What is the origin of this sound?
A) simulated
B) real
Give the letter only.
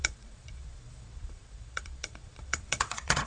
A